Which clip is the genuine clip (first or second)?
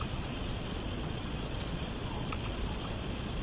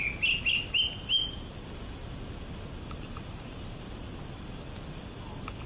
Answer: second